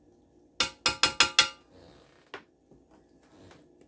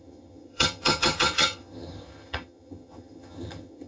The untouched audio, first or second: first